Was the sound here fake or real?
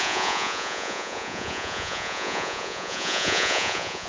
fake